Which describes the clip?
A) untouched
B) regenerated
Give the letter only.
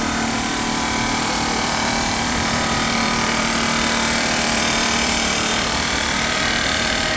B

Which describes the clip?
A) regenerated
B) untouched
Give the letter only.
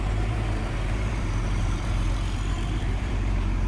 A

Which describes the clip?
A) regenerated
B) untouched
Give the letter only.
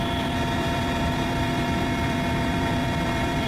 A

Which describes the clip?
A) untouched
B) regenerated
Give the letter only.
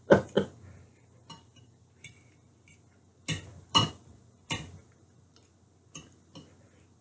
A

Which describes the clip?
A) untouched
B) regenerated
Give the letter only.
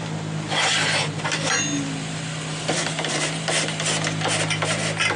A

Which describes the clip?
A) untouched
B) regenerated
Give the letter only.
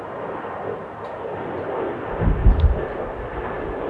A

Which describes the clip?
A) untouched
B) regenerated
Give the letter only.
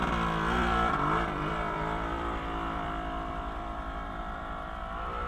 B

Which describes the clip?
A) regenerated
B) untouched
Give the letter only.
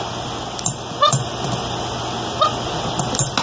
B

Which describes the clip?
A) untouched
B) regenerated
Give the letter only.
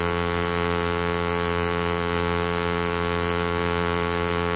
B